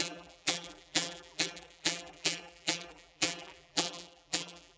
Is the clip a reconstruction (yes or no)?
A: yes